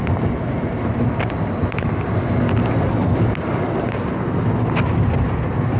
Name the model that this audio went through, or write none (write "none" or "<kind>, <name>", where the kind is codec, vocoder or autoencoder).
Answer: none